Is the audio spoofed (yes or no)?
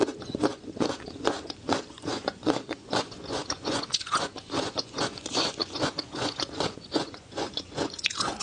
yes